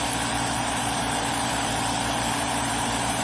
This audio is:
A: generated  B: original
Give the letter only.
A